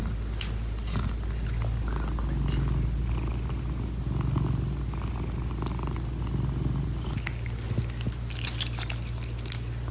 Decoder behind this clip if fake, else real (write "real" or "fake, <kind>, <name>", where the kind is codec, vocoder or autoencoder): real